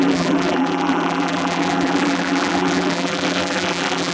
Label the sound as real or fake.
fake